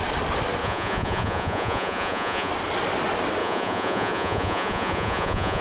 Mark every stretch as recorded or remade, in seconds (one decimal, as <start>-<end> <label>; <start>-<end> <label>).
0.0-0.6 recorded; 0.6-2.5 remade; 2.5-3.4 recorded; 3.4-5.6 remade